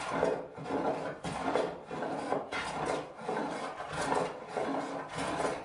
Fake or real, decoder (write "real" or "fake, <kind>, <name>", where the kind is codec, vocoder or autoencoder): real